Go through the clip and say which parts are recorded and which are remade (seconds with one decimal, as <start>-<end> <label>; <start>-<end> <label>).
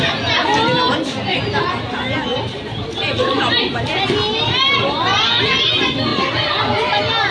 0.0-7.3 recorded